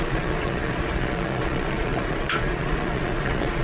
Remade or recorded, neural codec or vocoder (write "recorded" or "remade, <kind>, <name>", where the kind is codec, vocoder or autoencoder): remade, vocoder, Vocos